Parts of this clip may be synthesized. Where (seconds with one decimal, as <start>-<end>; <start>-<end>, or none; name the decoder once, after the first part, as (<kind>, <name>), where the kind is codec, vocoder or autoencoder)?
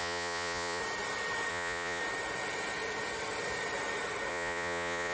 0.0-0.8 (vocoder, Vocos); 1.5-2.0; 4.3-5.1